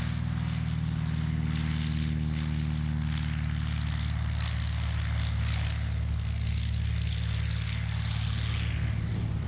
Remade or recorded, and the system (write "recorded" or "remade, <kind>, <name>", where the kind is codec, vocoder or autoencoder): recorded